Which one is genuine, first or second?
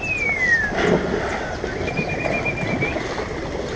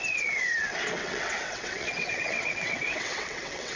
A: first